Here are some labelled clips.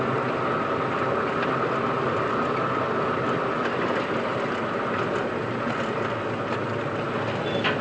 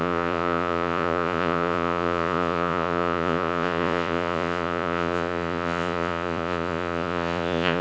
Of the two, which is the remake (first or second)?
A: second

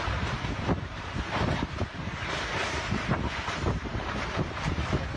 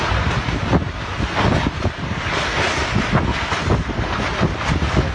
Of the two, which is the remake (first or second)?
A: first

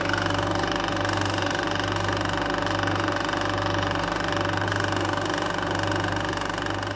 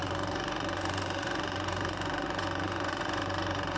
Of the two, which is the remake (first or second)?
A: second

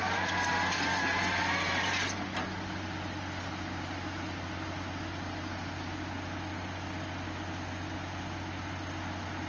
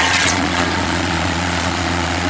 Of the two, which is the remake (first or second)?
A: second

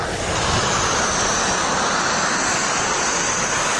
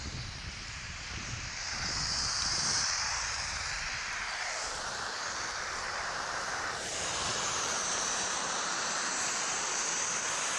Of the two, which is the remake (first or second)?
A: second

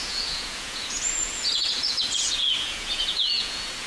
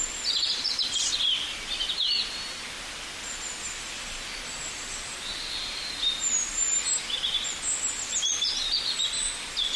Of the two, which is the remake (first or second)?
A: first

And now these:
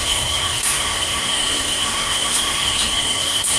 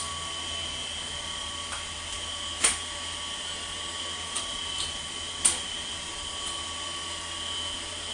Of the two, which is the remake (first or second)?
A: first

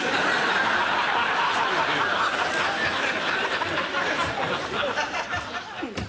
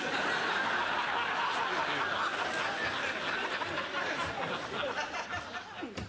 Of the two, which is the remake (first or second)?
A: first